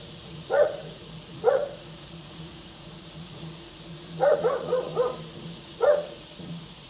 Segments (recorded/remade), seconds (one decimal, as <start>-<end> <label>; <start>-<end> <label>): 0.0-4.9 remade; 4.9-5.4 recorded; 5.4-6.9 remade